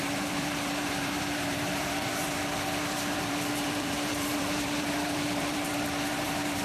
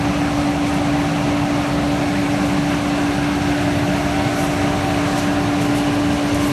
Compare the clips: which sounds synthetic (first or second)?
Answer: first